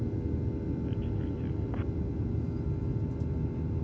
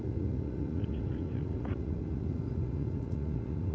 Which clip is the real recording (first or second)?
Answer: first